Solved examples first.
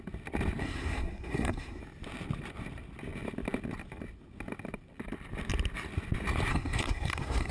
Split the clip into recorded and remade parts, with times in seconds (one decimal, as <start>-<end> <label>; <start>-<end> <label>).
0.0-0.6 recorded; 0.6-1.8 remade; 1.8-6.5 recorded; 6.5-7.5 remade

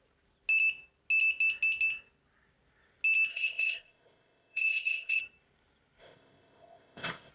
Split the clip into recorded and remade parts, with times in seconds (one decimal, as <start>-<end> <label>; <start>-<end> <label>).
0.0-3.3 recorded; 3.3-5.2 remade; 5.2-6.0 recorded; 6.0-7.3 remade

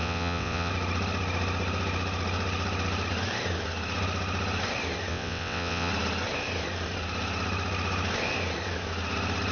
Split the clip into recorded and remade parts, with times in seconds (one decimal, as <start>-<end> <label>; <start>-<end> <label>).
0.0-0.7 remade; 0.7-5.1 recorded; 5.1-5.9 remade; 5.9-9.5 recorded

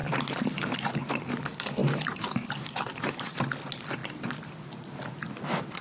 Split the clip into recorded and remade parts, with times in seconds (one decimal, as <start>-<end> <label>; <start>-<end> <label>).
0.0-1.4 remade; 1.4-1.8 recorded; 1.8-3.4 remade; 3.4-5.8 recorded